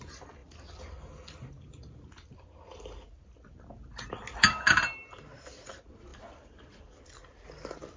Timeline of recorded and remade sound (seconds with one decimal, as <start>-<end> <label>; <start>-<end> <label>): 0.0-8.0 recorded